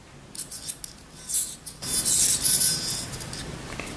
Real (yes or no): yes